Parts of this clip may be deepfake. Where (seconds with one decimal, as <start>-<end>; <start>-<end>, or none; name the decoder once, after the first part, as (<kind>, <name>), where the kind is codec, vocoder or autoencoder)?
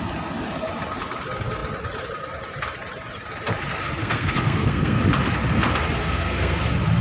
4.0-5.0 (codec, SNAC); 6.0-6.6